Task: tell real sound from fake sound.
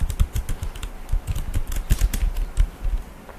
real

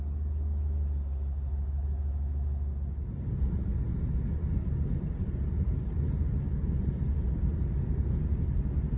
real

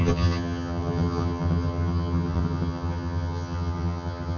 fake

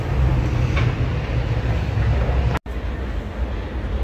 real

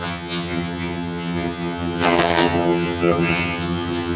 fake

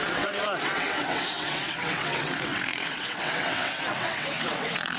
fake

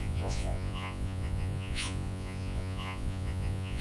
fake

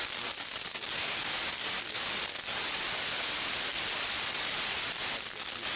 real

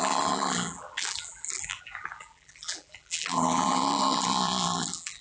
fake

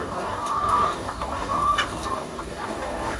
fake